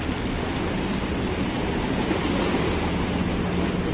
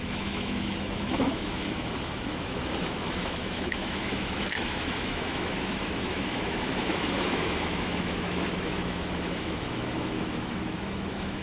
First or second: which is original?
first